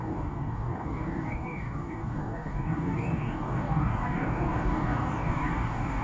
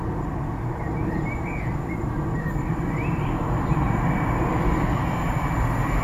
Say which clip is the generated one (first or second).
first